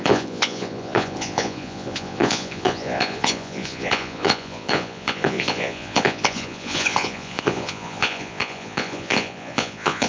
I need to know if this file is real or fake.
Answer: fake